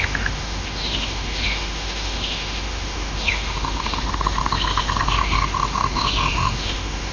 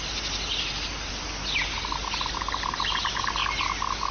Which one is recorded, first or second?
second